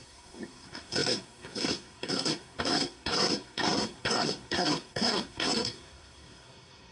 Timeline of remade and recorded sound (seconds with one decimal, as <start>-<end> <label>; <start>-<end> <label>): 0.0-6.9 remade